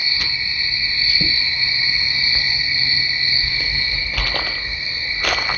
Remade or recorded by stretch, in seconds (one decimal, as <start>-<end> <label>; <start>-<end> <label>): 0.0-5.6 recorded